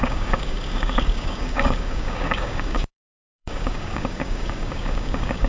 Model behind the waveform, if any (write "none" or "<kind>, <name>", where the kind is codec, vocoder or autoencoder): codec, DAC